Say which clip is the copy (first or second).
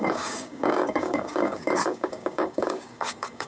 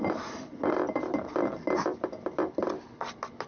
first